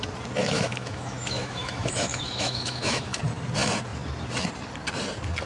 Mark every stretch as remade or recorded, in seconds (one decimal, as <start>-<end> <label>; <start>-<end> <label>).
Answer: 0.0-0.4 recorded; 0.4-3.2 remade; 3.2-5.5 recorded